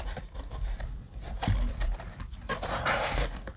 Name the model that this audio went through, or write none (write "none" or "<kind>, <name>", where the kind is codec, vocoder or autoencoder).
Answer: vocoder, BigVGAN v2